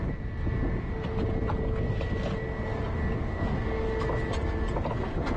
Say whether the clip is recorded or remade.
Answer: recorded